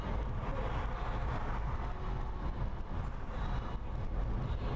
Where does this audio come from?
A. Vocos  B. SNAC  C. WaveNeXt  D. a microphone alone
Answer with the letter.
D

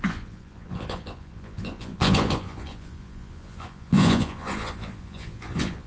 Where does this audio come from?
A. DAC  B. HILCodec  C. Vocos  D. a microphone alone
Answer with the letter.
C